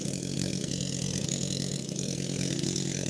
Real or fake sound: fake